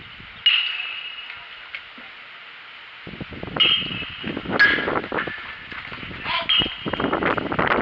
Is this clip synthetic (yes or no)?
no